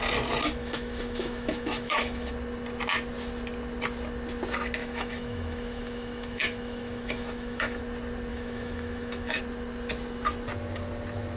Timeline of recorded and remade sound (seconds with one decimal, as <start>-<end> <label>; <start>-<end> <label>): 0.0-0.6 recorded; 0.6-2.3 remade; 2.3-4.8 recorded; 4.8-7.8 remade; 7.8-8.3 recorded; 8.3-9.4 remade; 9.4-11.4 recorded

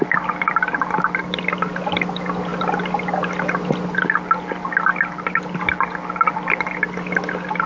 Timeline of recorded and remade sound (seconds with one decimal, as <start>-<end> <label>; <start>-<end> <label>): 0.0-7.7 recorded

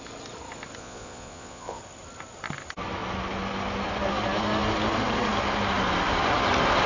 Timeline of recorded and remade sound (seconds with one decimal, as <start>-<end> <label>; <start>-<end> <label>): 0.0-0.8 recorded; 0.8-1.8 remade; 1.8-6.9 recorded

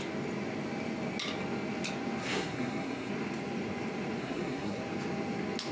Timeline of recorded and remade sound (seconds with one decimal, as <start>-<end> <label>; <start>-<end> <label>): 0.0-2.2 recorded; 2.2-3.1 remade; 3.1-4.2 recorded; 4.2-4.8 remade; 4.8-5.7 recorded

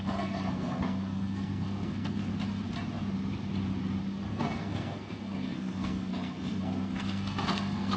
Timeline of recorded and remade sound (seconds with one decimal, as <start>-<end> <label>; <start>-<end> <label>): 0.0-2.3 remade; 2.3-4.3 recorded; 4.3-8.0 remade